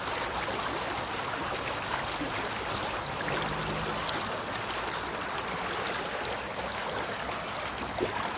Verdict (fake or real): real